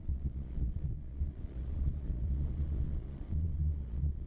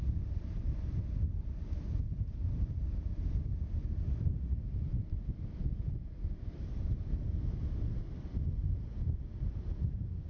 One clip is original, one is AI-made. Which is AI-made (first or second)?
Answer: first